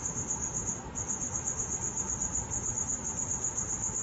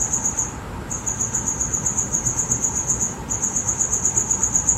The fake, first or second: first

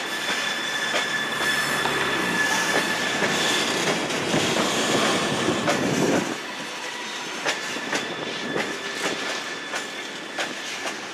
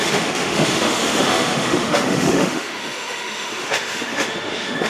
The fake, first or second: second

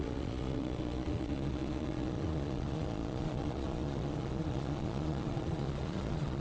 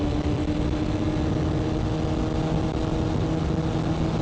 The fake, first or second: first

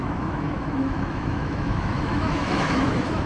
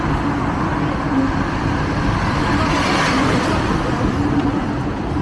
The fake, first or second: first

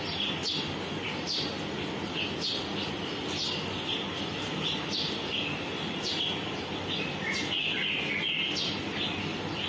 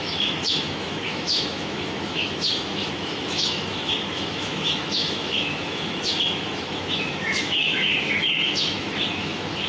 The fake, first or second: second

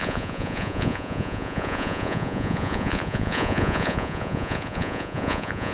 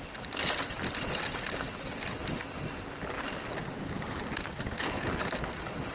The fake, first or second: first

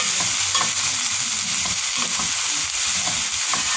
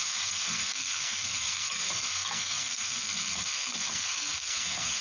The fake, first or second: second